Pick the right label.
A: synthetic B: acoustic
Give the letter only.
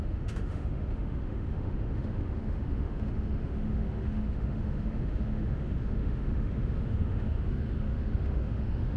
A